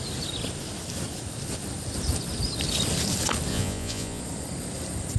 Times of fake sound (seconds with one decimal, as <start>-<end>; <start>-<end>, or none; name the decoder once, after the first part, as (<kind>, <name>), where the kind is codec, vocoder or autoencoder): 3.5-4.2 (vocoder, Vocos)